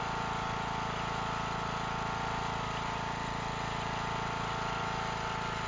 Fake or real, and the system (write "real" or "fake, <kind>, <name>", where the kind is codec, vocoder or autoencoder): real